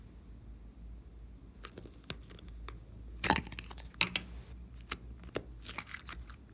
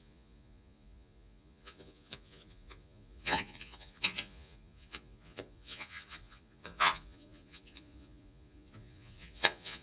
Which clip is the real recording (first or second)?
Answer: first